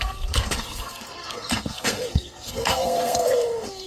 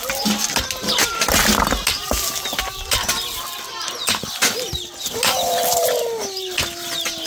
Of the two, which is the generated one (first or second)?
first